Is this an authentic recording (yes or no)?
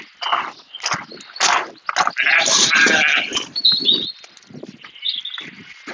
yes